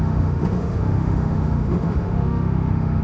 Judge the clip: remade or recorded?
remade